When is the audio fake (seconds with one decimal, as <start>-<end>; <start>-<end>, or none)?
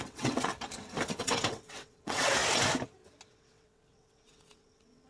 0.0-0.5; 1.2-2.4; 3.3-5.1